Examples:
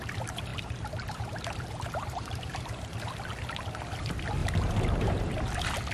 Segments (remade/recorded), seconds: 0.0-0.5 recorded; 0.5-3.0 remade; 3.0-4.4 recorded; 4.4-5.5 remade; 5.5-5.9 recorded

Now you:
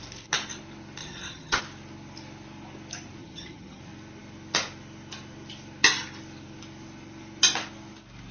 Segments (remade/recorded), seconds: 0.0-1.0 recorded; 1.0-1.6 remade; 1.6-3.2 recorded; 3.2-3.8 remade; 3.8-8.3 recorded

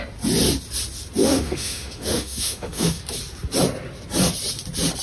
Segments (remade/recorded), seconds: 0.0-1.2 recorded; 1.2-3.0 remade; 3.0-5.0 recorded